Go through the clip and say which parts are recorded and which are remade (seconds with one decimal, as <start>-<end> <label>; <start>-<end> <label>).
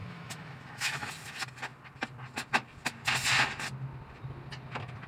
0.0-1.1 remade; 1.1-5.1 recorded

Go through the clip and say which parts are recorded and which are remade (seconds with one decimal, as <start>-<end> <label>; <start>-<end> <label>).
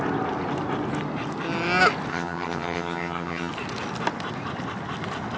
0.0-2.1 recorded; 2.1-3.5 remade; 3.5-5.4 recorded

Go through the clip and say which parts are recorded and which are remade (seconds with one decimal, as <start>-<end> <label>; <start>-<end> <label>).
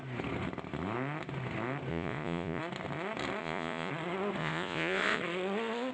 0.0-1.9 recorded; 1.9-2.6 remade; 2.6-3.4 recorded; 3.4-3.9 remade; 3.9-4.4 recorded; 4.4-5.2 remade; 5.2-5.9 recorded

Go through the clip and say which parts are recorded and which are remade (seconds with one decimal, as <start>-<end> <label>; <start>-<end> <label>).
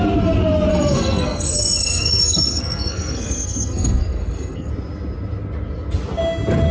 0.0-0.7 recorded; 0.7-4.7 remade; 4.7-6.7 recorded